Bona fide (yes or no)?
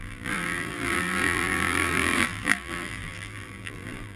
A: no